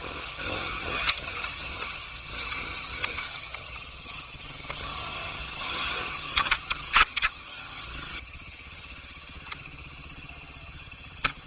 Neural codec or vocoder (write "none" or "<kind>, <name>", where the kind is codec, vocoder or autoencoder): vocoder, HiFi-GAN